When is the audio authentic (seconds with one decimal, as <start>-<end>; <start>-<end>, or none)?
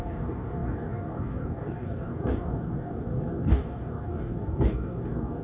none